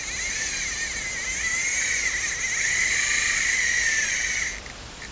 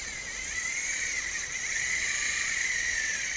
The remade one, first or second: second